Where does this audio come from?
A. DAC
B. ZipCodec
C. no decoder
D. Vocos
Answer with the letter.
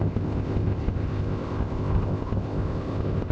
B